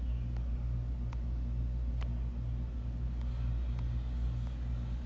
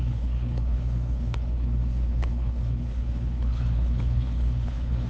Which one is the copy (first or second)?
second